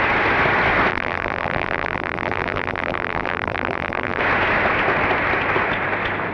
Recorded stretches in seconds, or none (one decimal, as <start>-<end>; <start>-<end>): 0.0-0.9; 4.2-6.3